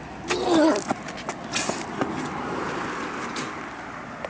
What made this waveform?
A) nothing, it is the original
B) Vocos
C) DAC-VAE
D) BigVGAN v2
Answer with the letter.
A